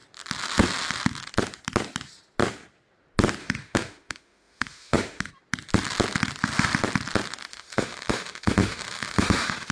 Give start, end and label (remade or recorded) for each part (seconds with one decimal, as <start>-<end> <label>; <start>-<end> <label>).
0.0-3.4 recorded; 3.4-5.3 remade; 5.3-7.5 recorded; 7.5-9.7 remade